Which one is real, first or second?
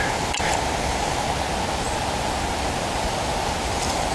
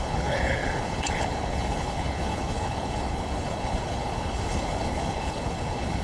first